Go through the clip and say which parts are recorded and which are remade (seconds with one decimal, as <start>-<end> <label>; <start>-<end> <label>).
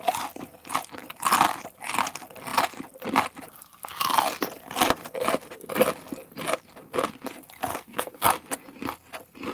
0.0-7.7 recorded; 7.7-8.3 remade; 8.3-9.5 recorded